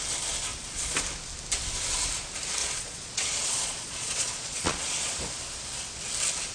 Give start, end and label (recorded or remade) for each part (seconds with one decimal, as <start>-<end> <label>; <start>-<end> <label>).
0.0-0.5 recorded; 0.5-1.0 remade; 1.0-2.6 recorded; 2.6-5.1 remade; 5.1-6.5 recorded